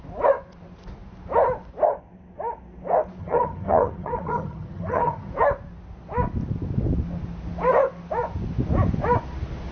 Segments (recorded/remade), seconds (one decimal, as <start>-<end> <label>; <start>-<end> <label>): 0.0-3.2 recorded; 3.2-5.3 remade; 5.3-9.7 recorded